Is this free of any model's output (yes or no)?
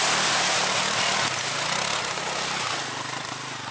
yes